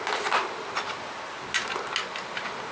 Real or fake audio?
real